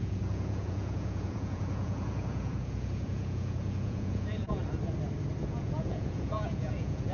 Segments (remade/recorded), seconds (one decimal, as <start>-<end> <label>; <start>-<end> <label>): 0.0-4.6 remade; 4.6-5.4 recorded; 5.4-7.1 remade